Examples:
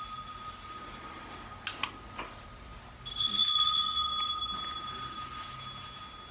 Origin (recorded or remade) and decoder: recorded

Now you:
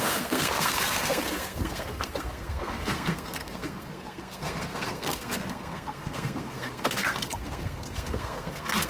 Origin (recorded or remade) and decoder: remade, codec, SNAC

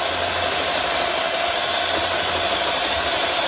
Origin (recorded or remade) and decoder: recorded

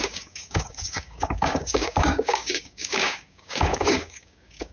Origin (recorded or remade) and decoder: remade, codec, DAC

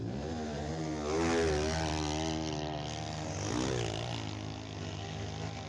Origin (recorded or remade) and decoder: recorded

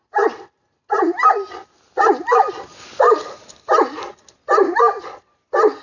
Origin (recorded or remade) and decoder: recorded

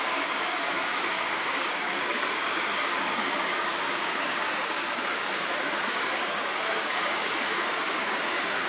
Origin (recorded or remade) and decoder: remade, codec, DAC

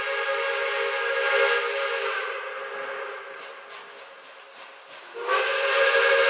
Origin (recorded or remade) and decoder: recorded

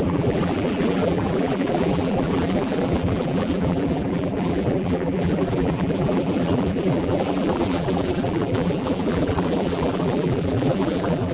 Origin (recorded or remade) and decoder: remade, vocoder, BigVGAN v2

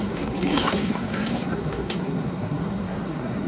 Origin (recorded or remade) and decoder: remade, codec, SNAC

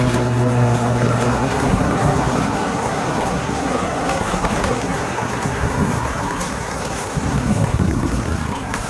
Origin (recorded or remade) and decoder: remade, codec, SNAC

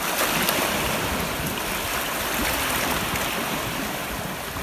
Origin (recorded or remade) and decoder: recorded